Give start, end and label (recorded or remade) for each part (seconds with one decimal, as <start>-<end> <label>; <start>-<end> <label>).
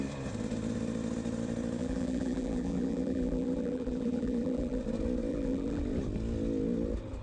0.0-1.8 recorded; 1.8-4.8 remade; 4.8-5.3 recorded; 5.3-5.8 remade; 5.8-7.2 recorded